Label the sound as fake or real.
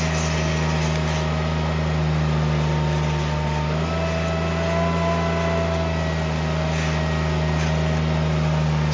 real